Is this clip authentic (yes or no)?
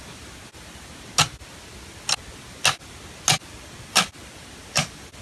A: yes